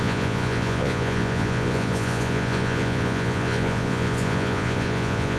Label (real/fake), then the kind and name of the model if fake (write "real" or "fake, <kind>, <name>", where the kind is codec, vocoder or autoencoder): fake, vocoder, Vocos